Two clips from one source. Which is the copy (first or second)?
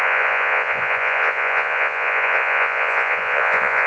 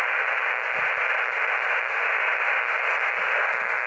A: first